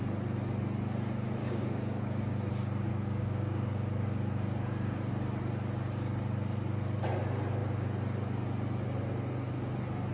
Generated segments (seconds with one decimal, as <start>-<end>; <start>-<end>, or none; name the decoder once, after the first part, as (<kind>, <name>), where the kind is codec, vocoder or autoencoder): 1.4-2.5 (codec, DAC); 2.9-5.1